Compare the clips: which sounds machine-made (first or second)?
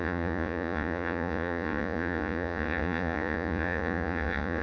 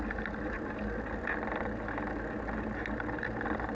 first